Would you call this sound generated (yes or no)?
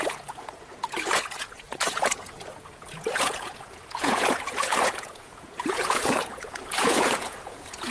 yes